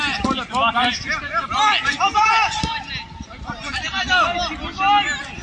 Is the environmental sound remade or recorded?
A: recorded